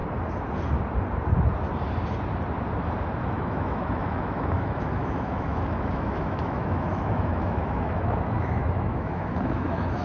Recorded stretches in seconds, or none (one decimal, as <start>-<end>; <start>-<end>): 0.0-3.2